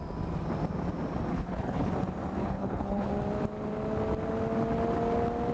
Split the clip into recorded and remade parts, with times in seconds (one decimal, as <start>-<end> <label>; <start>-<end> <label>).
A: 0.0-1.3 recorded; 1.3-1.9 remade; 1.9-2.4 recorded; 2.4-3.1 remade; 3.1-5.5 recorded